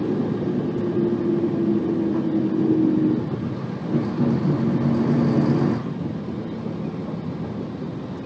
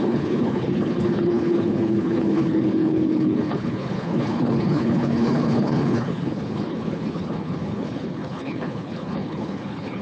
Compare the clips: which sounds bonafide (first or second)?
first